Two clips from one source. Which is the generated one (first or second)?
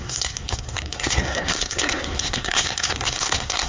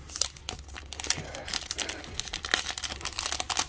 first